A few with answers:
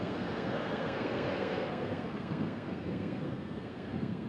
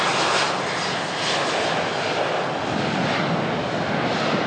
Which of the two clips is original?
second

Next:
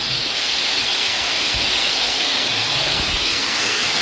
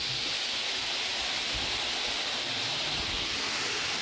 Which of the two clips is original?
second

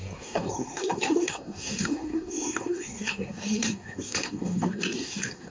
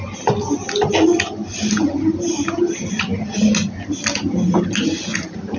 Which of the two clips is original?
second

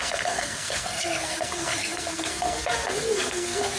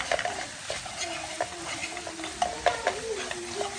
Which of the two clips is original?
second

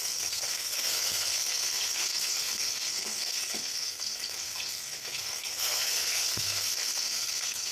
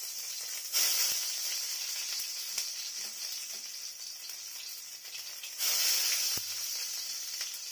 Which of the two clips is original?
second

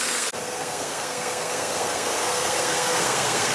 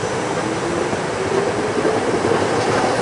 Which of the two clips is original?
second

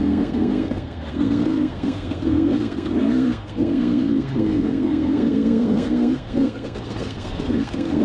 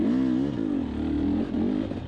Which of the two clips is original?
second